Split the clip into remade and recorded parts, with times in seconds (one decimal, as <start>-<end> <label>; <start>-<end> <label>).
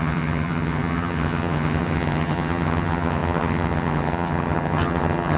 0.0-5.4 remade